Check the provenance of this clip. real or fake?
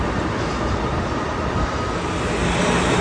real